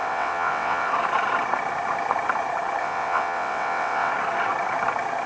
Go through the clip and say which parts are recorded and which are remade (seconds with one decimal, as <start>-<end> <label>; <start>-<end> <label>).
0.0-0.9 remade; 0.9-2.8 recorded; 2.8-4.1 remade; 4.1-5.3 recorded